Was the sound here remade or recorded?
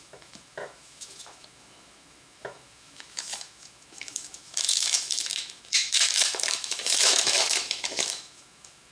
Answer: remade